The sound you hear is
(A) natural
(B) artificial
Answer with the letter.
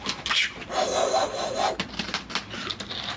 A